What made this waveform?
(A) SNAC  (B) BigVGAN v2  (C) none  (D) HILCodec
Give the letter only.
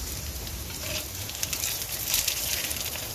B